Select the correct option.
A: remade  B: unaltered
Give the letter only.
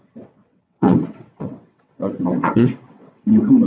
A